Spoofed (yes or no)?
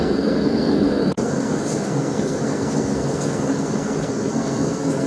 yes